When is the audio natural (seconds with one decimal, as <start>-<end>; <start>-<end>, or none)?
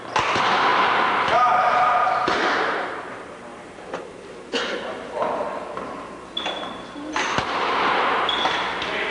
0.0-0.7; 2.8-3.5; 4.6-9.1